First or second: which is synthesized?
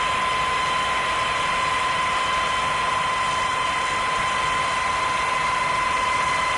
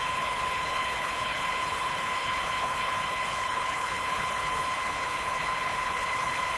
second